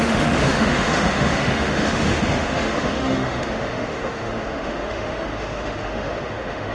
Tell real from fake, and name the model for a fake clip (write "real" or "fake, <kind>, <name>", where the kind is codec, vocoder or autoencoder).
fake, autoencoder, DAC-VAE